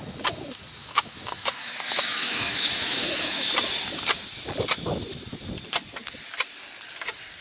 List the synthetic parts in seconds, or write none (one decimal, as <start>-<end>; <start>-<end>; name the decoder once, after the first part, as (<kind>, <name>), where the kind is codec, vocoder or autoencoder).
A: 0.8-3.5 (autoencoder, DAC-VAE)